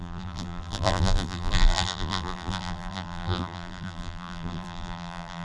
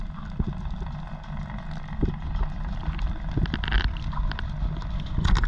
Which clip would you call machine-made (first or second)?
first